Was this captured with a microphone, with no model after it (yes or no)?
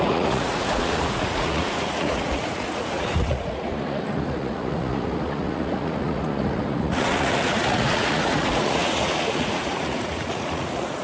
no